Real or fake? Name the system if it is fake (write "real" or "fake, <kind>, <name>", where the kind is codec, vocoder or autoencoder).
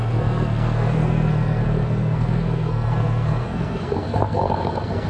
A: fake, codec, SNAC